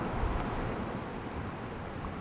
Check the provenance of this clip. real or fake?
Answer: real